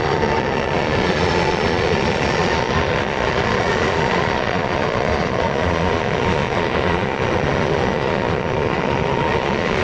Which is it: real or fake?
fake